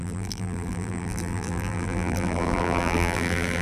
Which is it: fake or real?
fake